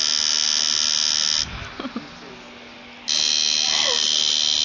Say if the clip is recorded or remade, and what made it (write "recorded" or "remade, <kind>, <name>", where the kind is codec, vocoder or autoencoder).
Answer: recorded